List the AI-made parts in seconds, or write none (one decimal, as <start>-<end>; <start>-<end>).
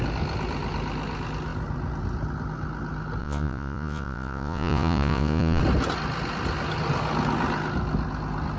3.2-5.6